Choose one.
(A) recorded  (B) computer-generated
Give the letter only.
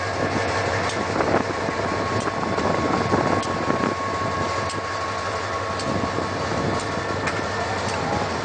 A